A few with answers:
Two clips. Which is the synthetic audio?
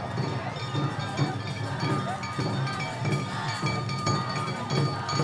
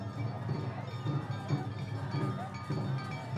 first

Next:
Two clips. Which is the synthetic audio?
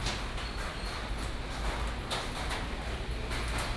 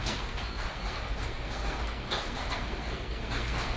second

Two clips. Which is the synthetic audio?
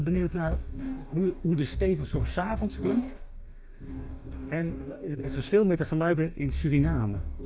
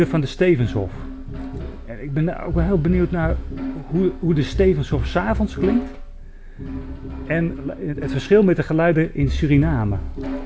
first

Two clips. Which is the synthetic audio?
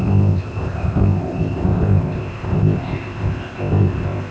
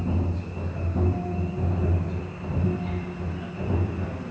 first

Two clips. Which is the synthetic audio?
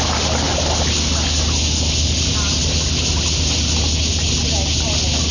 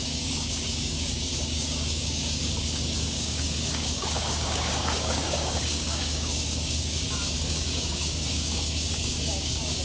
second